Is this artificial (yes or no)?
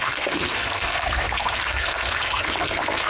yes